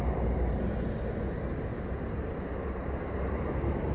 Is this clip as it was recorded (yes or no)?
yes